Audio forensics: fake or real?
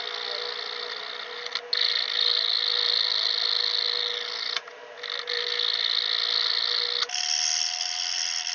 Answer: real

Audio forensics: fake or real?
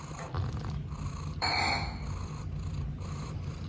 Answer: real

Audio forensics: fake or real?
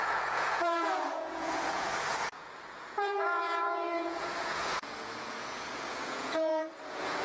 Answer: fake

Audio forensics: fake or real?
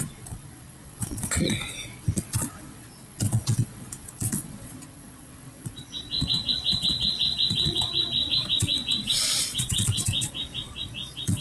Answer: fake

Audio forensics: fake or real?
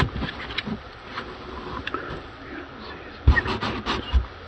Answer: real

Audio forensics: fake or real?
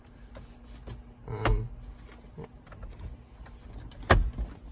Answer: real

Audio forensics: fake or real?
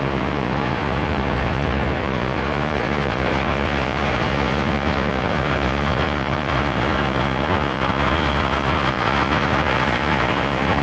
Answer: fake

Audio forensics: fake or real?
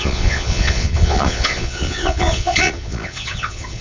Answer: fake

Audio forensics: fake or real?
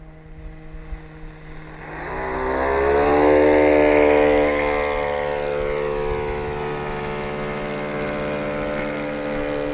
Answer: real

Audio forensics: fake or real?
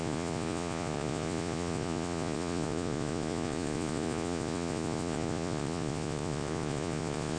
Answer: fake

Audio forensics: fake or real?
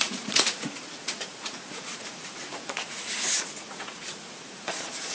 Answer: fake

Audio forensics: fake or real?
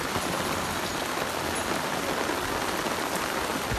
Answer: real